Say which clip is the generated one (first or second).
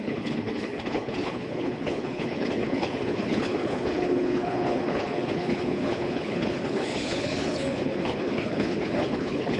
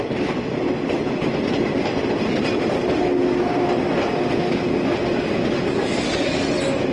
first